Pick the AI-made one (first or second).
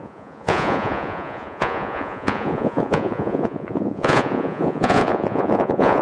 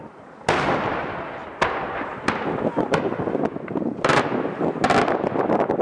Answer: first